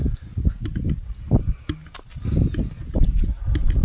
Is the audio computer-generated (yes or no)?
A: no